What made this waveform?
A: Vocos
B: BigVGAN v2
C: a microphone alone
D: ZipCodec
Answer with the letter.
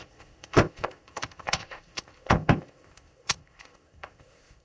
D